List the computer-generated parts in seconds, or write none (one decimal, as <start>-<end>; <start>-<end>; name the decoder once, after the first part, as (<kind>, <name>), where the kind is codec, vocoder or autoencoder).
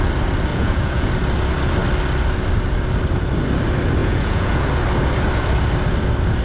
0.5-1.1 (vocoder, Vocos); 4.0-4.7